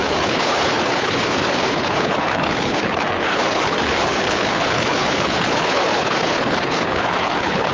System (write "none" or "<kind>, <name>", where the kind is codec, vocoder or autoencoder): codec, HILCodec